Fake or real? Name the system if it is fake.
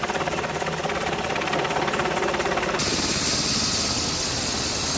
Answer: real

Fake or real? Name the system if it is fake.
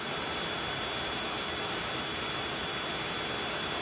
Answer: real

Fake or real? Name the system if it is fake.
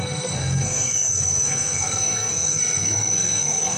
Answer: fake, codec, SNAC